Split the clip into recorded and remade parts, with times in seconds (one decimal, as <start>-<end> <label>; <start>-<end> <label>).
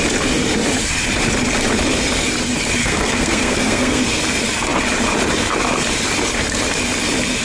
0.0-2.8 recorded; 2.8-4.0 remade; 4.0-7.4 recorded